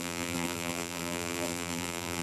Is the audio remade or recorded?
remade